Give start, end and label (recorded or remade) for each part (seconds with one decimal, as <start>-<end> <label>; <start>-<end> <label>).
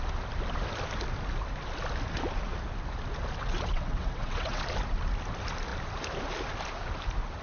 0.0-3.4 recorded; 3.4-4.6 remade; 4.6-7.4 recorded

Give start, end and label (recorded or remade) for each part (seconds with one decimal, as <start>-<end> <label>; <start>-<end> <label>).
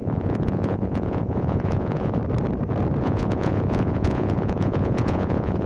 0.0-2.2 remade; 2.2-3.0 recorded; 3.0-5.7 remade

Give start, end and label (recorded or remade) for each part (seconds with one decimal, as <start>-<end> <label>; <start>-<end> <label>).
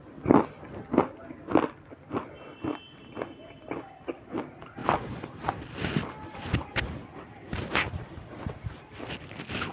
0.0-4.8 recorded; 4.8-8.4 remade; 8.4-9.7 recorded